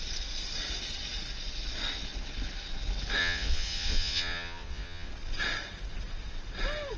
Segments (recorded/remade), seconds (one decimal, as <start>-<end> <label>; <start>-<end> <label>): 0.0-3.2 recorded; 3.2-5.1 remade; 5.1-7.0 recorded